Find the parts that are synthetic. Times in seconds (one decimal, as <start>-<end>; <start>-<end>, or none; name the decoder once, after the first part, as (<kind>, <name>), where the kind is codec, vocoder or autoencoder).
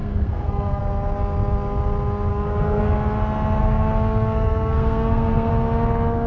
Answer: 0.0-0.8 (codec, SNAC); 2.3-2.8; 3.6-5.5